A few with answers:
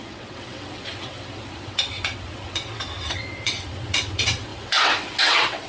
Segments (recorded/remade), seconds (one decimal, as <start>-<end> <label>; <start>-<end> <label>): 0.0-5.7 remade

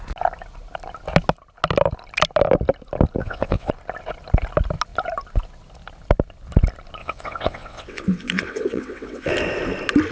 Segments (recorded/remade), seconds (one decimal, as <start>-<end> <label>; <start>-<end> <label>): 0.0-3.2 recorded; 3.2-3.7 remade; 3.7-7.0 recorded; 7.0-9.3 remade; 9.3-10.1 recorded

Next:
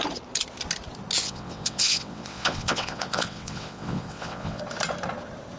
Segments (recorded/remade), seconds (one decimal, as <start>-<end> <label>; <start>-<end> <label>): 0.0-1.2 recorded; 1.2-4.6 remade; 4.6-5.6 recorded

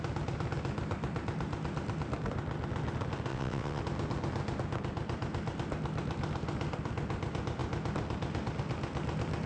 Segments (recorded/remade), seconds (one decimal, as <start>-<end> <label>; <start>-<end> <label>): 0.0-3.3 recorded; 3.3-3.8 remade; 3.8-9.5 recorded

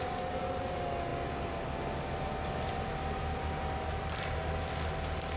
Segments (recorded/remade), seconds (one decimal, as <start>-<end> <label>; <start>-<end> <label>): 0.0-5.4 recorded

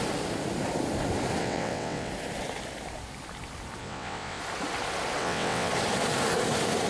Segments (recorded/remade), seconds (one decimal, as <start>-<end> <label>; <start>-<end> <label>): 0.0-1.4 recorded; 1.4-2.1 remade; 2.1-3.8 recorded; 3.8-4.4 remade; 4.4-5.2 recorded; 5.2-5.7 remade; 5.7-6.9 recorded